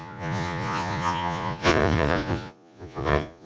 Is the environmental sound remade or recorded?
remade